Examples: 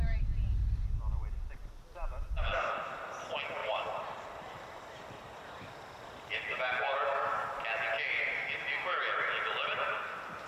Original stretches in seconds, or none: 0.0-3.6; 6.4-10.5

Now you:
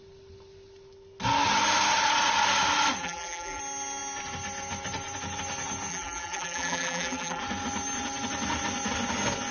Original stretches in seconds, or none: 0.0-3.0; 3.6-5.9; 7.4-9.5

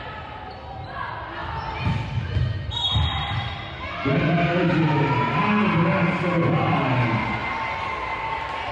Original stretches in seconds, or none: 0.0-8.7

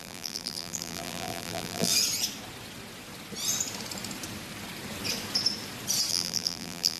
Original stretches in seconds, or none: 1.9-6.1

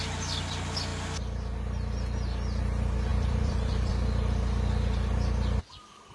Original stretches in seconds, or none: 0.0-3.1; 3.9-6.1